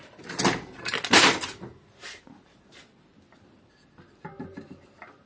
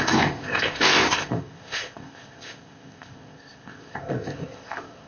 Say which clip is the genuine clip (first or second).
first